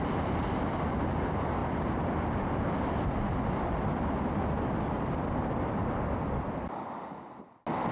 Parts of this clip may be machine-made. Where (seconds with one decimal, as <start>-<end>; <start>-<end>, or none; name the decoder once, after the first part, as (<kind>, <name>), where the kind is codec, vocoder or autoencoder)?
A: none